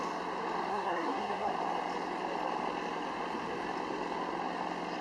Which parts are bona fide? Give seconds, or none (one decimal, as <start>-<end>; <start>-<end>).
0.0-0.7; 1.5-5.0